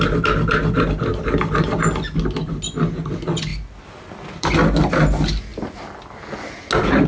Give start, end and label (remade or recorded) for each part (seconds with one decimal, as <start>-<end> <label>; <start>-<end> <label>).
0.0-7.1 recorded